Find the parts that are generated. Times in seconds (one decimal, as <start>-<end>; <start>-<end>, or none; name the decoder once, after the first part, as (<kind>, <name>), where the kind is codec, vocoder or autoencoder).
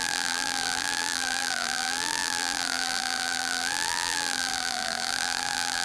0.0-5.8 (vocoder, BigVGAN v2)